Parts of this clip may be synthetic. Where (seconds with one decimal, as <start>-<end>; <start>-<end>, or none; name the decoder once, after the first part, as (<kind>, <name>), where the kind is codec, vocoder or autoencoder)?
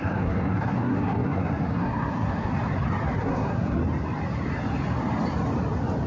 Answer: 0.0-2.5 (codec, SNAC); 3.2-3.8